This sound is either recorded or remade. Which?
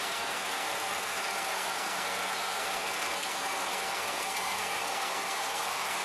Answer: remade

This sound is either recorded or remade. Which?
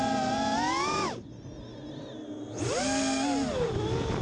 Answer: recorded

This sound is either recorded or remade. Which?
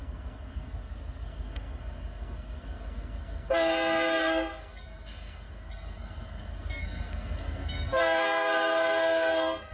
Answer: remade